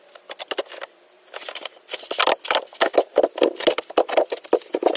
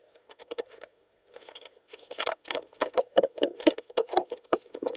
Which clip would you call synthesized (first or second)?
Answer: second